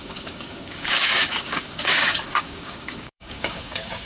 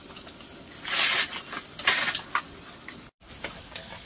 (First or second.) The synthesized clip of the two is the first